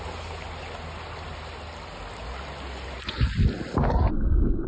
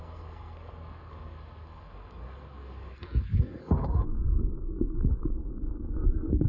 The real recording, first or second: first